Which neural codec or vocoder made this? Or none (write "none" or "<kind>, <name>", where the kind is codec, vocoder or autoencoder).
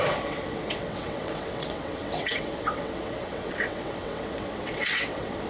vocoder, WaveNeXt